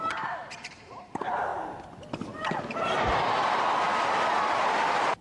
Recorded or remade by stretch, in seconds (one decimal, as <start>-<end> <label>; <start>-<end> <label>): 0.0-1.5 remade; 1.5-4.6 recorded; 4.6-5.2 remade